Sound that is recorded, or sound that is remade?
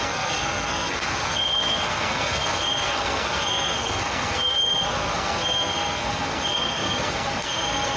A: remade